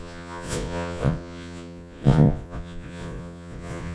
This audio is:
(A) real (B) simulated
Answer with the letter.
B